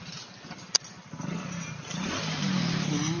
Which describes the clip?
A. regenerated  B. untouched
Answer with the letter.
B